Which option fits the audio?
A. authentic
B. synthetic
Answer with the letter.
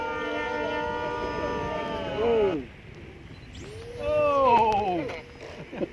A